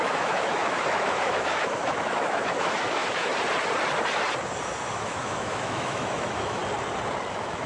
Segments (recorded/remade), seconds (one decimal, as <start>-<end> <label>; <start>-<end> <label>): 0.0-3.3 remade; 3.3-4.9 recorded; 4.9-6.6 remade; 6.6-7.3 recorded; 7.3-7.7 remade

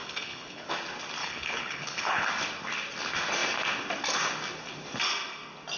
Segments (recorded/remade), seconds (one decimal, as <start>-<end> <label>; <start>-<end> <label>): 0.0-0.7 remade; 0.7-1.2 recorded; 1.2-2.3 remade; 2.3-5.8 recorded

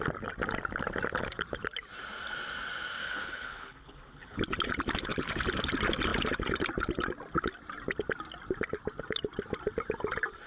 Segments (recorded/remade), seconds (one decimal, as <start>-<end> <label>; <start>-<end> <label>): 0.0-3.0 recorded; 3.0-4.4 remade; 4.4-10.5 recorded

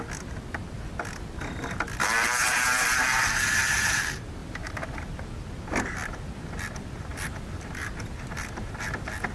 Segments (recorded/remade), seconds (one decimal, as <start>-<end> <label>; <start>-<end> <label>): 0.0-2.0 recorded; 2.0-4.0 remade; 4.0-4.4 recorded; 4.4-5.2 remade; 5.2-7.1 recorded; 7.1-8.6 remade; 8.6-9.3 recorded